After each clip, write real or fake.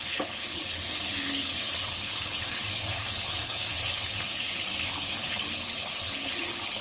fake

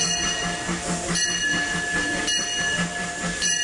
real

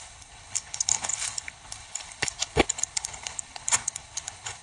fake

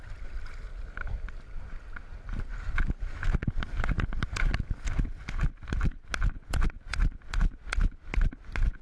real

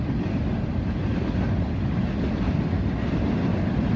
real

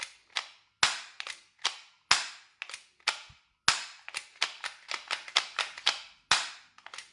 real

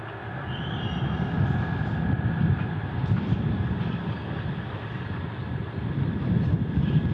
real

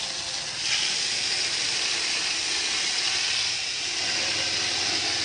real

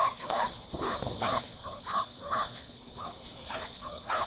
fake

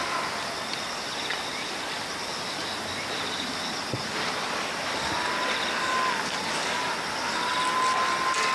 real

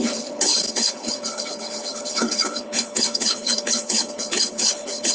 fake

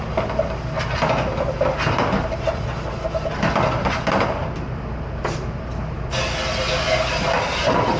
real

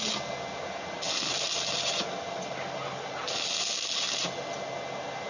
real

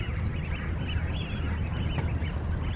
real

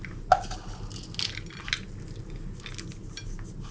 real